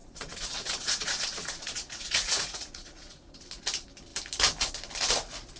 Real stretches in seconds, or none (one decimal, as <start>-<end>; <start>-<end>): 3.4-5.6